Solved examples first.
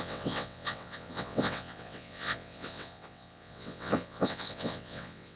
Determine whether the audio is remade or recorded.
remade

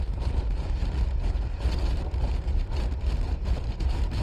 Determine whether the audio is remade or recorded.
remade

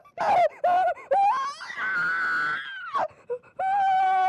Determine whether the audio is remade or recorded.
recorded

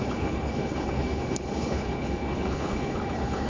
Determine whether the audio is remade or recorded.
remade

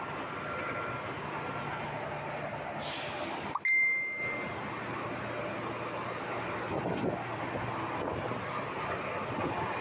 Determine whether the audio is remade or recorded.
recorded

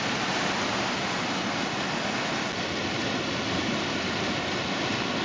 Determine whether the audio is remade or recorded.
recorded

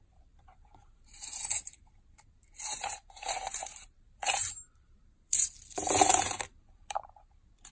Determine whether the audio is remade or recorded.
remade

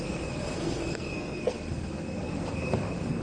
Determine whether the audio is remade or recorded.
remade